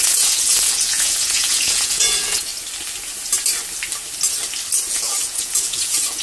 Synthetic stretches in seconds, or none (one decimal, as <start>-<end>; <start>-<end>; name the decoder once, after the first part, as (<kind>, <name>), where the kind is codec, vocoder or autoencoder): 0.0-2.5 (vocoder, Vocos); 4.9-6.2